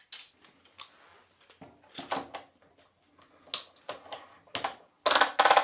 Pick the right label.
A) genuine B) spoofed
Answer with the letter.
A